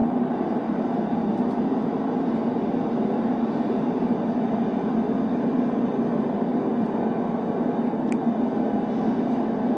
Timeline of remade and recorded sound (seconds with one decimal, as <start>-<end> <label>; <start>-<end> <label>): 0.0-6.5 remade; 6.5-7.3 recorded; 7.3-8.2 remade; 8.2-9.8 recorded